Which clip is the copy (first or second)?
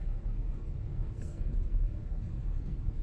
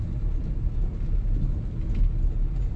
first